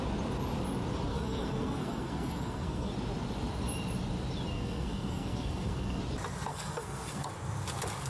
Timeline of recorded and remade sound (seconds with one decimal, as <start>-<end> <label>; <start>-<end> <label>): 0.0-1.1 recorded; 1.1-2.9 remade; 2.9-4.5 recorded; 4.5-6.0 remade; 6.0-6.5 recorded; 6.5-7.3 remade; 7.3-8.1 recorded

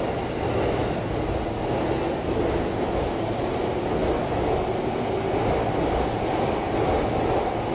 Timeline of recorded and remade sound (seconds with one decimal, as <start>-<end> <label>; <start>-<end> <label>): 0.0-7.7 recorded

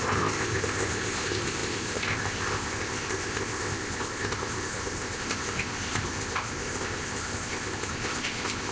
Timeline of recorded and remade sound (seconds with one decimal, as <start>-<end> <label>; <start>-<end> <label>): 0.0-8.7 remade